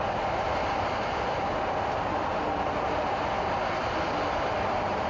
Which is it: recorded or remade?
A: recorded